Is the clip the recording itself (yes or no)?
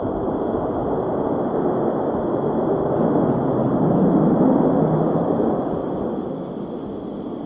yes